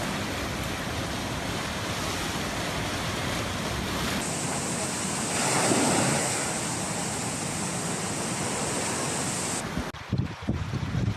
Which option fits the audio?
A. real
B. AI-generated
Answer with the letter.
A